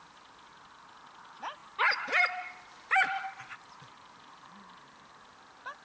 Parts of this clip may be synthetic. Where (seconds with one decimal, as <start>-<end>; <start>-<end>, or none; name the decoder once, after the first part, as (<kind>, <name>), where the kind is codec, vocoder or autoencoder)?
1.6-5.1 (vocoder, BigVGAN v2)